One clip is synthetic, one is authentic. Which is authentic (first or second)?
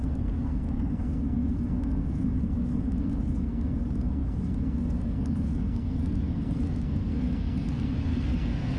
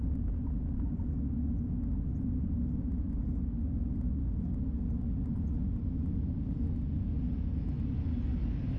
second